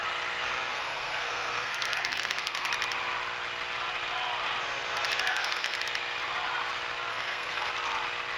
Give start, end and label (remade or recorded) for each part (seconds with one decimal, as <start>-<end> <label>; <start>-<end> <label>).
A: 0.0-0.7 recorded; 0.7-2.7 remade; 2.7-5.3 recorded; 5.3-5.8 remade; 5.8-7.1 recorded; 7.1-7.7 remade; 7.7-8.4 recorded

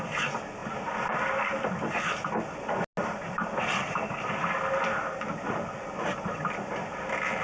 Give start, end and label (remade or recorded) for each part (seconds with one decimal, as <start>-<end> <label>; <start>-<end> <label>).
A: 0.0-7.4 recorded

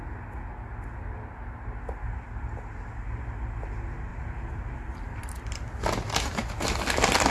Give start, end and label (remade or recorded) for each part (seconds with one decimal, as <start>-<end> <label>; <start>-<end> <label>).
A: 0.0-4.1 recorded; 4.1-5.8 remade; 5.8-7.3 recorded